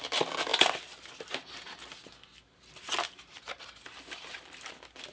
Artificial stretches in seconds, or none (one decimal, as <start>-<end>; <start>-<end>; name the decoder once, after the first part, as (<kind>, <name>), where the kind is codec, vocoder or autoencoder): none

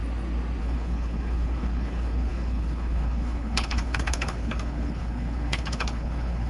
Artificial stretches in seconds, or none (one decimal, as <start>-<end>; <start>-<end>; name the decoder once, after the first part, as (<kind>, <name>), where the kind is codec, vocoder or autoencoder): 0.6-6.5 (codec, HILCodec)

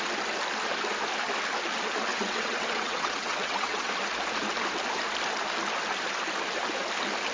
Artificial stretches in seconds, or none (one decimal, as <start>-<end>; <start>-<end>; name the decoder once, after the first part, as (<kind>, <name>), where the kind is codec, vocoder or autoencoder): 2.1-3.9 (vocoder, WaveNeXt)

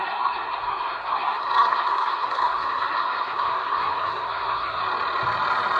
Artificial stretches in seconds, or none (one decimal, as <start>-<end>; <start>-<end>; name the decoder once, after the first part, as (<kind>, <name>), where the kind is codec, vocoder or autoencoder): 0.0-4.8 (codec, SNAC)

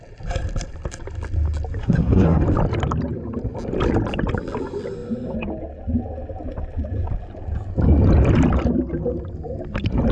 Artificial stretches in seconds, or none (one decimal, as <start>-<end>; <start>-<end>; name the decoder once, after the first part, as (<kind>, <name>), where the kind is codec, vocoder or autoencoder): 1.8-2.4 (codec, SNAC)

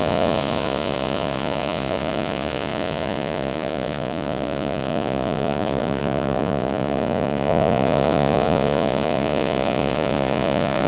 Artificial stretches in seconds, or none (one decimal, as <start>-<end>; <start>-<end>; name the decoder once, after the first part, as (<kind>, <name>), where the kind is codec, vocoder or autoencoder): 0.0-10.9 (vocoder, Vocos)

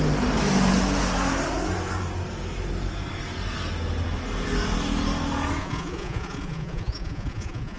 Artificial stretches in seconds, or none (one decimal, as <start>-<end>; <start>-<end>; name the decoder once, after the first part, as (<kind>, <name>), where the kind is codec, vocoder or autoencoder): 5.6-7.8 (vocoder, Vocos)